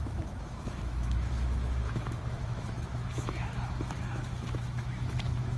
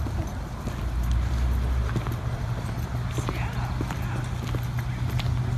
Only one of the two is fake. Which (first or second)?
first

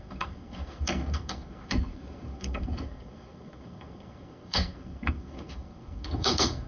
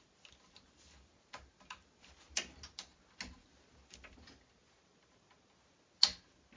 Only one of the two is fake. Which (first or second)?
first